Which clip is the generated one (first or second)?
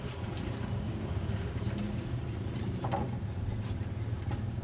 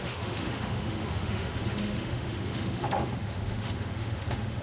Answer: second